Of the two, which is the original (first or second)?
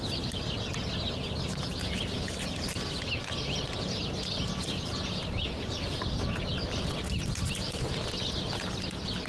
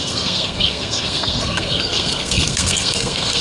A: first